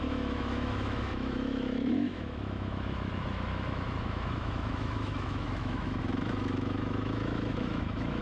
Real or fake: fake